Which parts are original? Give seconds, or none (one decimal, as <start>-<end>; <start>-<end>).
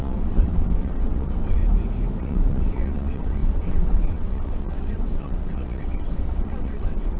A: 1.6-2.2